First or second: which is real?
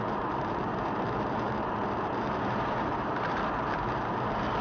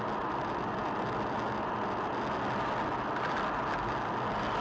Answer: second